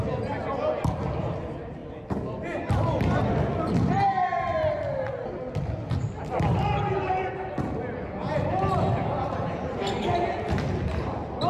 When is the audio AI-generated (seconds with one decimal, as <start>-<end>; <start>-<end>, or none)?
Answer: none